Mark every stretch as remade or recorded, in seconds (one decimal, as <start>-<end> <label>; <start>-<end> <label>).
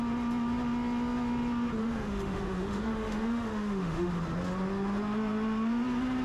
0.0-1.8 recorded; 1.8-4.1 remade; 4.1-6.2 recorded